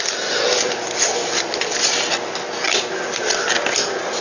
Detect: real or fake real